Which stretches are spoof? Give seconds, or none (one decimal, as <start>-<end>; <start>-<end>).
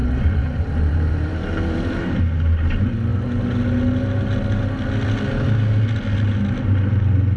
0.0-2.2